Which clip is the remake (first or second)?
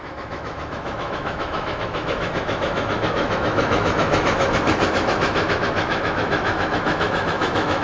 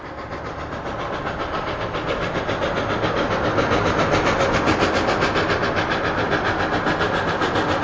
first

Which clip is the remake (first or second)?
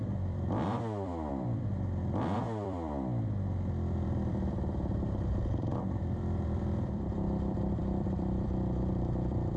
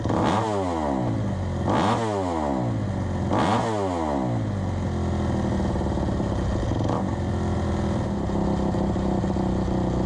first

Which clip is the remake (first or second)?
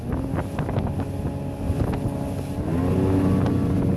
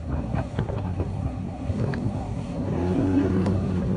second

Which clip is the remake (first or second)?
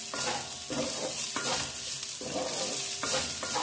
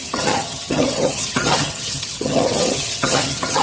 second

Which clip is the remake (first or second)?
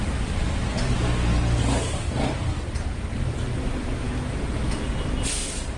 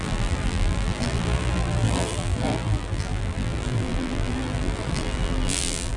second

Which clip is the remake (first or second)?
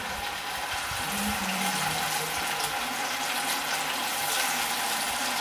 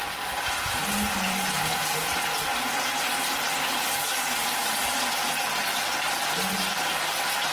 first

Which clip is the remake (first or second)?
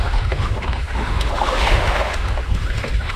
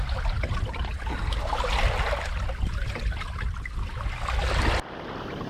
first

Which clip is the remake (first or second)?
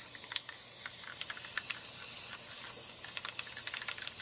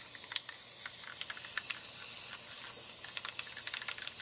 first